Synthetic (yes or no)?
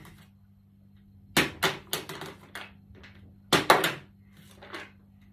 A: no